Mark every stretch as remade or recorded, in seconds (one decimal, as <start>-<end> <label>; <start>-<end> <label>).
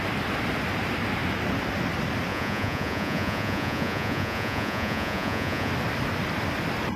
0.0-2.3 recorded; 2.3-5.7 remade; 5.7-7.0 recorded